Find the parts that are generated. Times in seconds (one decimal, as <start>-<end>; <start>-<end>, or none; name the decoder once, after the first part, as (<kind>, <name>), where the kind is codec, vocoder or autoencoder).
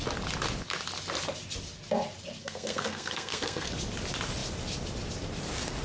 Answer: 2.4-3.7 (codec, SNAC)